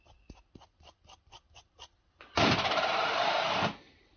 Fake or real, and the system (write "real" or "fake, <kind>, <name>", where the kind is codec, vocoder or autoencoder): real